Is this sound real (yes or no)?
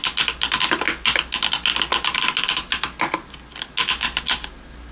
yes